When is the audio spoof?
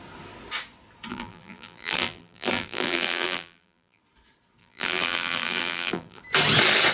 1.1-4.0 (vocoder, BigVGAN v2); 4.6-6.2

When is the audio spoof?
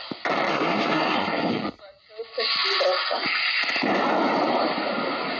0.5-1.5 (codec, SNAC)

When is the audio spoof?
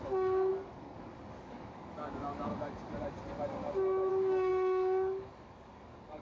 0.0-2.5 (codec, DAC); 4.1-6.2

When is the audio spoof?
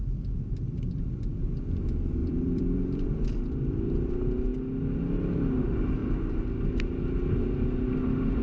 2.2-4.1 (vocoder, BigVGAN v2)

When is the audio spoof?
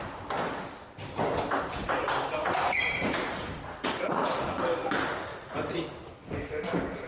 2.4-4.6 (vocoder, Vocos); 5.3-6.0